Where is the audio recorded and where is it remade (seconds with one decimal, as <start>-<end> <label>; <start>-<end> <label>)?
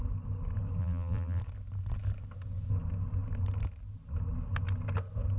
0.0-0.8 recorded; 0.8-1.4 remade; 1.4-5.4 recorded